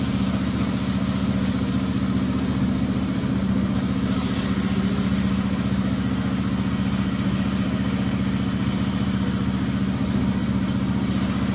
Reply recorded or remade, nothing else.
recorded